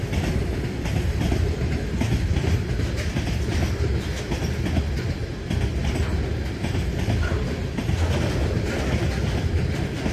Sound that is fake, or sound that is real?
real